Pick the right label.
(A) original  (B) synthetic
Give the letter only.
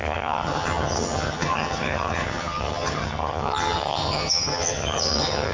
B